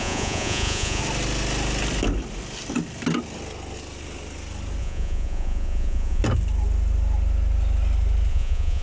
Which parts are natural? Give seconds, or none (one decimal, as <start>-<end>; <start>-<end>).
1.0-4.8; 6.2-8.3